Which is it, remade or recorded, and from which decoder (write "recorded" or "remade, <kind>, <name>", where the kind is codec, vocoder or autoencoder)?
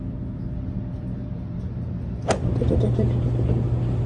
recorded